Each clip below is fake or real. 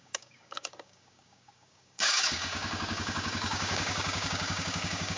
fake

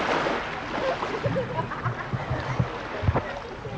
real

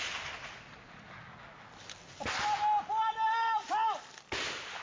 real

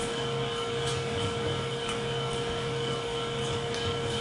fake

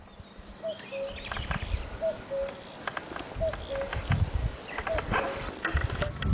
real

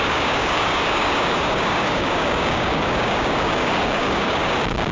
fake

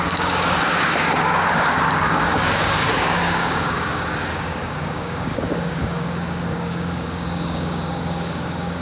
fake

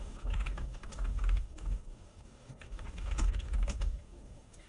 fake